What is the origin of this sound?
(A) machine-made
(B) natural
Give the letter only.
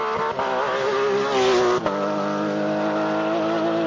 B